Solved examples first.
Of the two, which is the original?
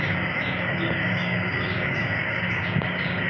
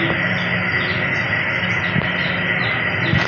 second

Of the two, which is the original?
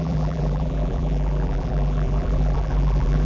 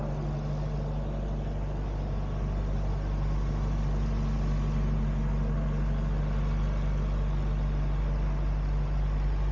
second